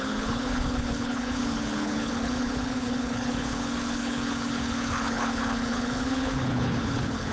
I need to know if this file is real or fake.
fake